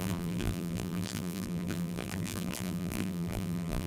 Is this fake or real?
fake